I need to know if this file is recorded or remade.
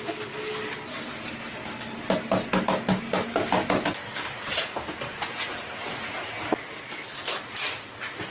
recorded